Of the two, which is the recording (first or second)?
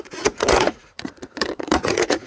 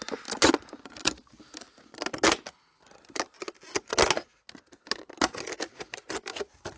second